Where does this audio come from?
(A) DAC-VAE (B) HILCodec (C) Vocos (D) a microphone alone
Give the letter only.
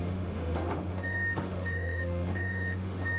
A